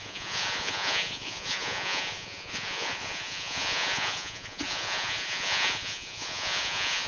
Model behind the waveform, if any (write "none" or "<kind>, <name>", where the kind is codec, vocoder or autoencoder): vocoder, Vocos